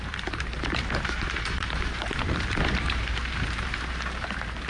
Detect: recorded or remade remade